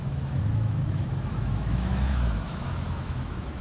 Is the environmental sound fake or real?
fake